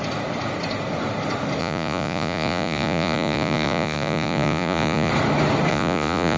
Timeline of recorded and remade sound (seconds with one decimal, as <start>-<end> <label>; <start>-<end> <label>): 0.0-1.6 recorded; 1.6-5.1 remade; 5.1-5.7 recorded; 5.7-6.4 remade